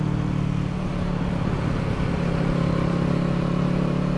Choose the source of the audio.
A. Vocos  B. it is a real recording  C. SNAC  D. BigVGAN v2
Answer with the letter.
B